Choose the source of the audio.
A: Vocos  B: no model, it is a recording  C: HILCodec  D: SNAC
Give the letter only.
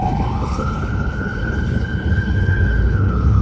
C